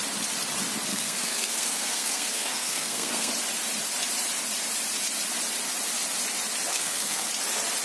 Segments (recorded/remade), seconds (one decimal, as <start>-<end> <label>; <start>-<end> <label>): 0.0-0.9 recorded; 0.9-3.3 remade; 3.3-6.7 recorded; 6.7-7.3 remade; 7.3-7.8 recorded